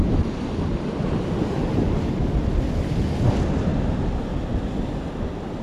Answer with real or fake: real